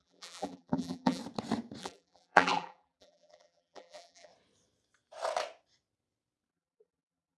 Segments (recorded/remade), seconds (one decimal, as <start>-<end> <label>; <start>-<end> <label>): 0.0-1.2 remade; 1.2-1.8 recorded; 1.8-4.3 remade; 4.3-6.5 recorded; 6.5-7.4 remade